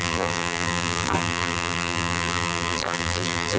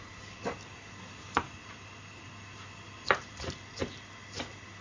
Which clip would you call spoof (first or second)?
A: first